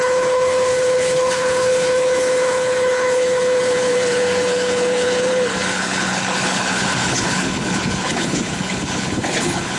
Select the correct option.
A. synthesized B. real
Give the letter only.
A